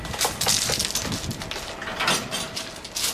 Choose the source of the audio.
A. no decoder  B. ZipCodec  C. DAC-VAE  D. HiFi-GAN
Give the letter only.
A